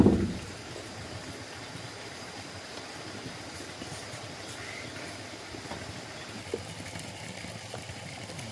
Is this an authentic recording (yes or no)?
no